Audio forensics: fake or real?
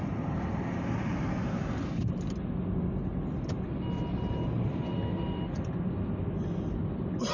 real